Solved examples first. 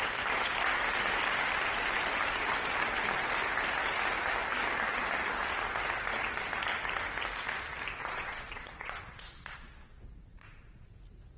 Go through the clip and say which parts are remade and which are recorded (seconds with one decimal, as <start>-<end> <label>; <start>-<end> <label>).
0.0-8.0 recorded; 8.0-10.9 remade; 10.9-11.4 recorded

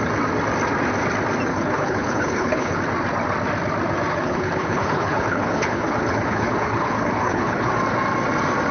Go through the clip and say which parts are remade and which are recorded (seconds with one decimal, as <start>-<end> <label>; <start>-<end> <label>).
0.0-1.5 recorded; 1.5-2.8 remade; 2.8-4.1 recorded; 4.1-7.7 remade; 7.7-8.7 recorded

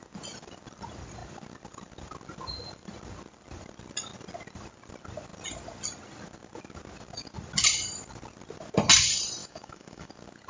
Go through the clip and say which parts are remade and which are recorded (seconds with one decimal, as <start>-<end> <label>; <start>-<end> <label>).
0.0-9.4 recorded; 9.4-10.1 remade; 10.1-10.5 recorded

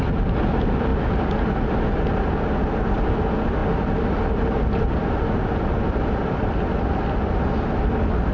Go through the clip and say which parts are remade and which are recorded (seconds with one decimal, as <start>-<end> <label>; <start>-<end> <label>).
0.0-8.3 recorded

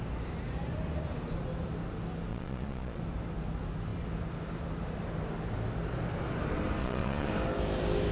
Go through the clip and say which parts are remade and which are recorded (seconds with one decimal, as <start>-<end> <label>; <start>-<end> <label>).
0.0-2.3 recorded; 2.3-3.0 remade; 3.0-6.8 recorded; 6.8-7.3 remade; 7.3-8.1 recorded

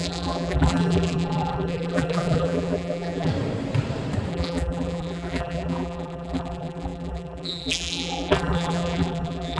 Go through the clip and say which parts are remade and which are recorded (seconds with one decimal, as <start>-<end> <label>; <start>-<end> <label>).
0.0-3.3 remade; 3.3-4.3 recorded; 4.3-9.6 remade

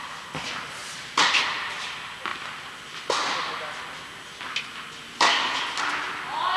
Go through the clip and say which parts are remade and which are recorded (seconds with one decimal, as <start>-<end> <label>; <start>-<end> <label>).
0.0-6.6 recorded